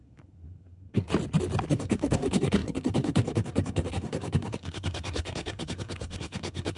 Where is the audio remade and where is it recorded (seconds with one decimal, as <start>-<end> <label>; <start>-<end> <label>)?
0.0-1.1 remade; 1.1-1.7 recorded; 1.7-6.8 remade